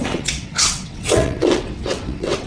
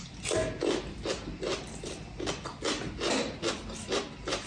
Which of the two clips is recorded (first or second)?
second